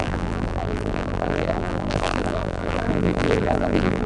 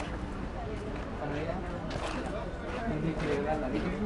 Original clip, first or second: second